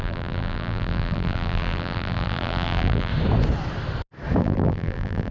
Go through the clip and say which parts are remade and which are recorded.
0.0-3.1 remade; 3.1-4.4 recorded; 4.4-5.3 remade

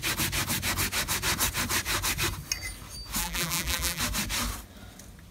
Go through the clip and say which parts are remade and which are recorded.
0.0-3.2 recorded; 3.2-4.0 remade; 4.0-5.3 recorded